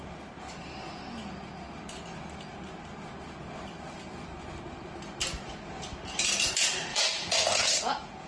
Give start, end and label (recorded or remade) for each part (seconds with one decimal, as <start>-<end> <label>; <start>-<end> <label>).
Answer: 0.0-6.9 recorded; 6.9-8.3 remade